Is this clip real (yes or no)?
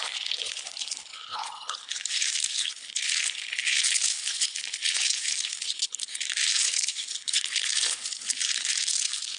no